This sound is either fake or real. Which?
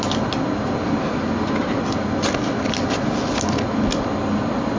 real